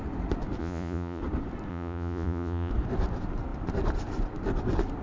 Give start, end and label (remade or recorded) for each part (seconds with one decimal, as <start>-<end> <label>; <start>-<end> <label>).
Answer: 0.0-0.6 recorded; 0.6-1.2 remade; 1.2-1.7 recorded; 1.7-2.7 remade; 2.7-5.0 recorded